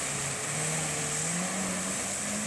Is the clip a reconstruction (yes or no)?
no